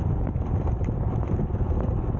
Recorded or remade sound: recorded